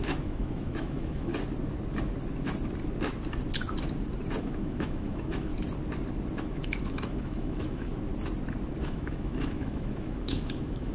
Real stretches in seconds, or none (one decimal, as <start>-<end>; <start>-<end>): 1.3-4.4; 5.5-6.4; 8.1-8.8